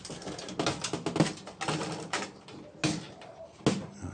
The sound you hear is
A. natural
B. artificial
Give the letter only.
A